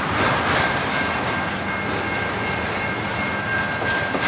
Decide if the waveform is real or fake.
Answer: real